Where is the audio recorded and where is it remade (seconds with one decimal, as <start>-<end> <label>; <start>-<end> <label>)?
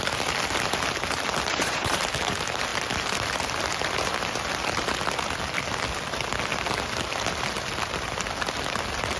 0.0-1.5 recorded; 1.5-2.0 remade; 2.0-9.2 recorded